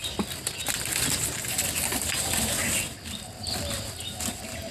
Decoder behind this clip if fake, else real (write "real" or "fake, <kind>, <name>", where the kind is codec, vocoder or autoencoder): real